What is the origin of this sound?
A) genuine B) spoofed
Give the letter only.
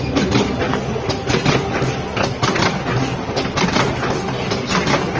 A